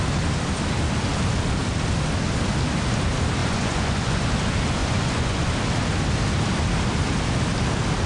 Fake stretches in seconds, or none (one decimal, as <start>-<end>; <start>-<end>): 3.4-4.2; 4.8-5.5